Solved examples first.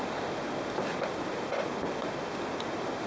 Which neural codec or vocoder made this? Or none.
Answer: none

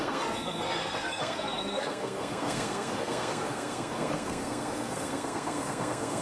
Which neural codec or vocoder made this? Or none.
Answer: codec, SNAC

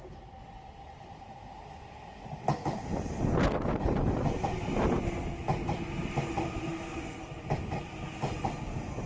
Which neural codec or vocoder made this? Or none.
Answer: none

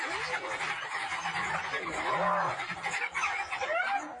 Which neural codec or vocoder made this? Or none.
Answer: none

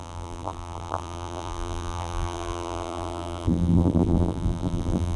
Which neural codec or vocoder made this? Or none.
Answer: vocoder, BigVGAN v2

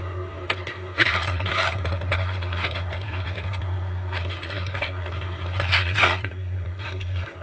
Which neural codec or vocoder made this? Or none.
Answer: codec, SNAC